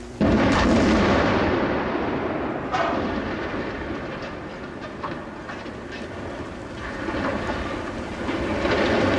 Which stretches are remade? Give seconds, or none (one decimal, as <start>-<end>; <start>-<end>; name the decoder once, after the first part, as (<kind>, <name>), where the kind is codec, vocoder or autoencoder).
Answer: 0.0-9.2 (vocoder, BigVGAN v2)